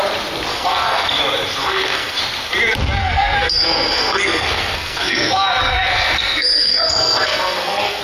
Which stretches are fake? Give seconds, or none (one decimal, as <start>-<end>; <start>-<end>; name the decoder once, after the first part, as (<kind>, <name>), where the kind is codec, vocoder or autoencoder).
0.5-1.2 (codec, SNAC); 1.6-2.2; 3.0-8.0